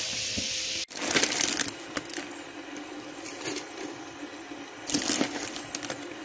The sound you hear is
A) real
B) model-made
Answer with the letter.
A